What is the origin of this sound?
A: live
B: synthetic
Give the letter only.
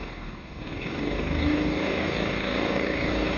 B